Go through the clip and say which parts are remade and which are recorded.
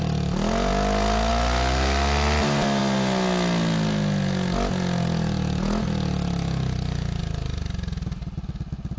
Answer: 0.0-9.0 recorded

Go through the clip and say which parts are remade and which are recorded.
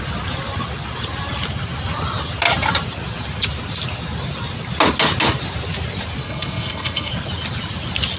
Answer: 0.0-6.2 recorded; 6.2-7.1 remade; 7.1-8.2 recorded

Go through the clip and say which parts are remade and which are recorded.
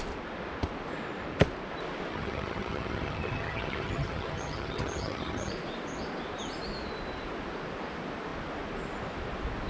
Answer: 0.0-2.1 recorded; 2.1-5.5 remade; 5.5-9.7 recorded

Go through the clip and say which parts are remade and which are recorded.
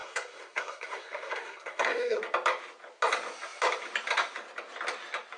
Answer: 0.0-2.2 remade; 2.2-5.4 recorded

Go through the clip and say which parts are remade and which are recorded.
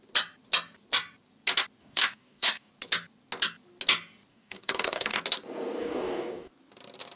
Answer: 0.0-1.8 recorded; 1.8-2.7 remade; 2.7-4.3 recorded; 4.3-5.2 remade; 5.2-5.8 recorded; 5.8-6.5 remade; 6.5-7.2 recorded